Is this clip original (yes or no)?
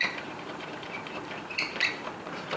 no